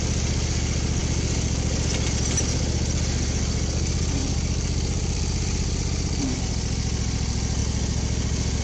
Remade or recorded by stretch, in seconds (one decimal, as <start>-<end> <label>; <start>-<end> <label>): 0.0-4.2 recorded; 4.2-6.4 remade; 6.4-8.6 recorded